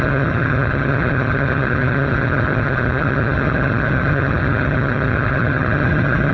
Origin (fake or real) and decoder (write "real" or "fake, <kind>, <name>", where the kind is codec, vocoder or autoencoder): fake, vocoder, HiFi-GAN